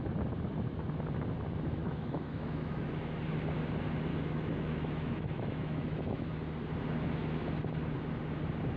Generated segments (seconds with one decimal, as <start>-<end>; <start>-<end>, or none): 1.8-3.2; 4.1-6.3